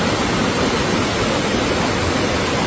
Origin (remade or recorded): recorded